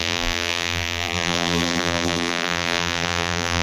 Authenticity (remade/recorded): remade